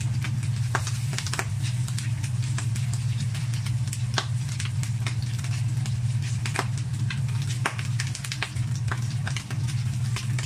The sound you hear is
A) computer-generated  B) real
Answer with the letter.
A